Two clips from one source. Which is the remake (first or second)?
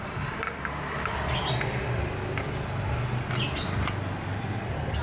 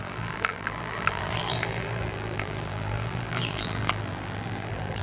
second